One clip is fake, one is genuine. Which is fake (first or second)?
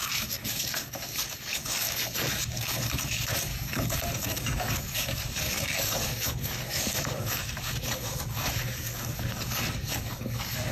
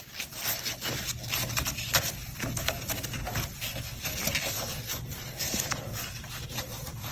first